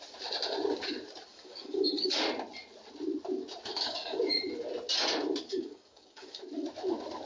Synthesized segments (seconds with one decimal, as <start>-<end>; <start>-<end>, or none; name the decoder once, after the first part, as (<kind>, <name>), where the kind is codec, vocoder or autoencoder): 1.3-2.1 (codec, DAC); 3.7-4.2; 5.5-6.4